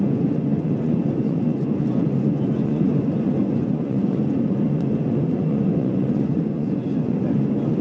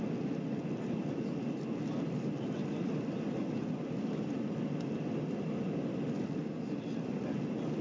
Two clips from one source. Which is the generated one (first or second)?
first